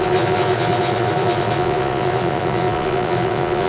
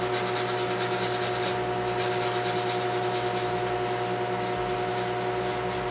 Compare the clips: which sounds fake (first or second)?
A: first